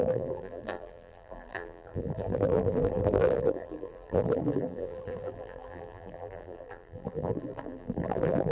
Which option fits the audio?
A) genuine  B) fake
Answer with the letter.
B